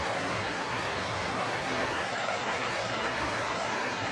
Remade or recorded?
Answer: remade